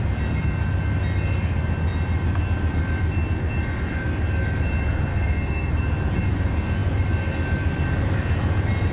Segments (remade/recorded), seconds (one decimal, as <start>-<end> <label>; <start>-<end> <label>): 0.0-5.1 recorded; 5.1-5.7 remade; 5.7-8.9 recorded